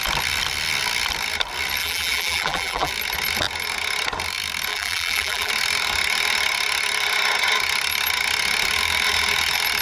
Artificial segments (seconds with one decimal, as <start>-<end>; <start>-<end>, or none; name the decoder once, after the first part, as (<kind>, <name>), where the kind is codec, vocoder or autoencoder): 1.8-2.9 (vocoder, BigVGAN v2); 4.7-5.5